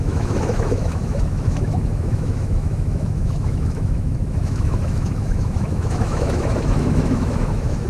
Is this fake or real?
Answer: fake